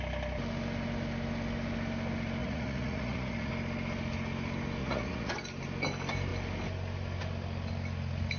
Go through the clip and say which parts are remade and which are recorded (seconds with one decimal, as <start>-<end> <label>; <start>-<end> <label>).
0.0-2.4 recorded; 2.4-3.5 remade; 3.5-4.8 recorded; 4.8-5.3 remade; 5.3-8.4 recorded